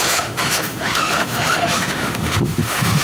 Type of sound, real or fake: fake